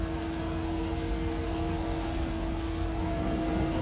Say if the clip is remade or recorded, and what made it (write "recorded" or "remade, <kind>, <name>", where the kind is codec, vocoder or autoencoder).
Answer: remade, codec, SNAC